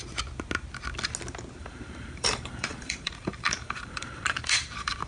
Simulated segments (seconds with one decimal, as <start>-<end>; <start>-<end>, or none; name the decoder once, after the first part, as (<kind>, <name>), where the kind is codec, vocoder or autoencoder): 1.6-5.1 (vocoder, BigVGAN v2)